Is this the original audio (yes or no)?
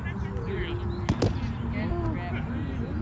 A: yes